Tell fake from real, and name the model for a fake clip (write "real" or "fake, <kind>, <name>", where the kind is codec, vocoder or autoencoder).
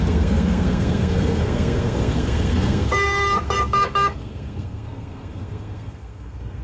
fake, codec, SNAC